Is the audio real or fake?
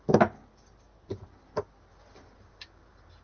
real